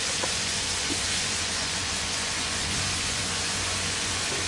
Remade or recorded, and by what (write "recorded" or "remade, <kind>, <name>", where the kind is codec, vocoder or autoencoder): remade, vocoder, Vocos